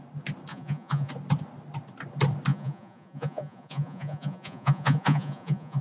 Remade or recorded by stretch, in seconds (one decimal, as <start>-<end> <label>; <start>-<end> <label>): 0.0-0.5 recorded; 0.5-1.1 remade; 1.1-2.5 recorded; 2.5-5.8 remade